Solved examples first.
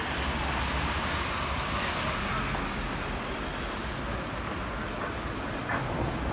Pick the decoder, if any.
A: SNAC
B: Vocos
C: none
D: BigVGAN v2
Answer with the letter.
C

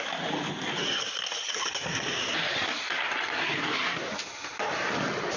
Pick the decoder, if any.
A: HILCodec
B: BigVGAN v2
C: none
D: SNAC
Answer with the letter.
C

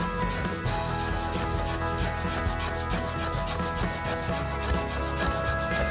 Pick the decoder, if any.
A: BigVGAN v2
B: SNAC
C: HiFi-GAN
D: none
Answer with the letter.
D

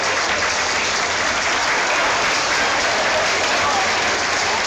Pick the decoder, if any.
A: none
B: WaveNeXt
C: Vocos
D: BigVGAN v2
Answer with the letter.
D